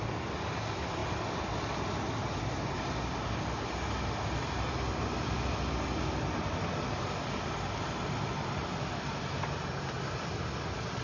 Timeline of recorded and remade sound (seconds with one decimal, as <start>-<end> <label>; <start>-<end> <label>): 0.0-11.0 recorded